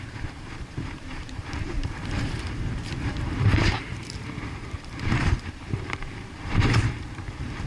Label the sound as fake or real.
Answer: fake